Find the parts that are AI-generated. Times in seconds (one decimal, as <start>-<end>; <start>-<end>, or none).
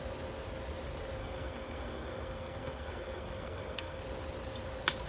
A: 1.2-4.0